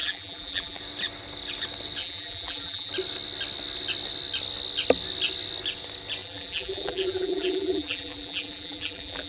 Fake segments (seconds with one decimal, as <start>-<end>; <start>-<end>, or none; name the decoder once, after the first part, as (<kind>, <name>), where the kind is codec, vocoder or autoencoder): 0.0-0.8 (vocoder, BigVGAN v2); 2.0-2.9; 6.2-9.3

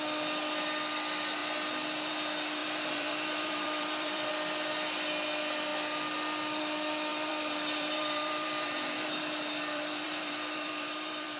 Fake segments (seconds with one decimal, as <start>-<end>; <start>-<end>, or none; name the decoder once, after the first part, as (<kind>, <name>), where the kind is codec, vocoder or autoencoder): 2.6-4.3 (vocoder, BigVGAN v2); 7.1-11.4